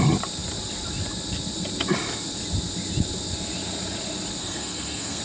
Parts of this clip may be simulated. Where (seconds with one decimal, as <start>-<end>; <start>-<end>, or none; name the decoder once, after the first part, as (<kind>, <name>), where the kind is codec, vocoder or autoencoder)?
4.4-5.2 (codec, SNAC)